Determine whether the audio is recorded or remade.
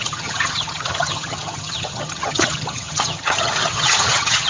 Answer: remade